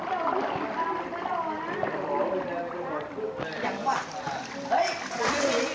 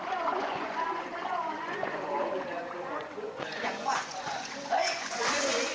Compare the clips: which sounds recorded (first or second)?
first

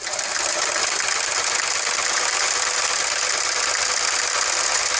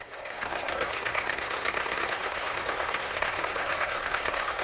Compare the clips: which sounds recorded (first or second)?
first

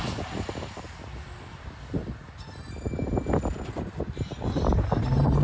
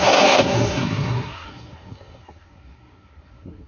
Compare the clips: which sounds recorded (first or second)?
first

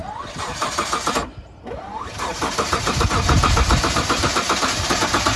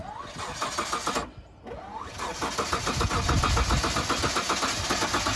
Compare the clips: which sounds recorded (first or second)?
second